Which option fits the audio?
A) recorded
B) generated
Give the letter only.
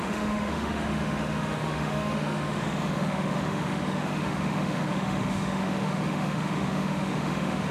B